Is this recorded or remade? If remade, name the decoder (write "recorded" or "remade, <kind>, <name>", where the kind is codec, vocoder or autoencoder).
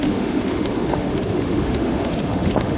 remade, autoencoder, DAC-VAE